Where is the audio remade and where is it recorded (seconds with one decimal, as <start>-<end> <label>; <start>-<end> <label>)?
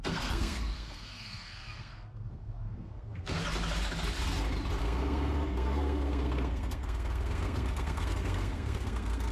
0.0-3.4 remade; 3.4-4.8 recorded; 4.8-9.3 remade